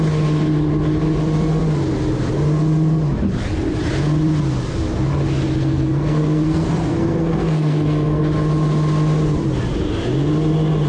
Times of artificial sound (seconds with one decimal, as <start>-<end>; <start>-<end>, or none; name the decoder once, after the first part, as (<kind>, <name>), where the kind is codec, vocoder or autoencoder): 5.6-8.2 (codec, SNAC)